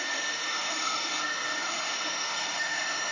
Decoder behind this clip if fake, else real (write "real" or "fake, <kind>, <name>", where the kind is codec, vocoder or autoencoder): fake, autoencoder, DAC-VAE